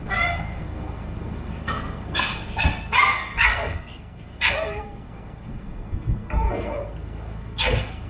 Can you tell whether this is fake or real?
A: fake